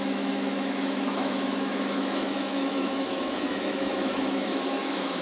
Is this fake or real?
fake